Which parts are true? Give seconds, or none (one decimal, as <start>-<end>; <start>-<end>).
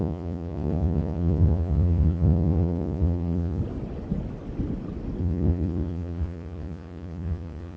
3.6-5.2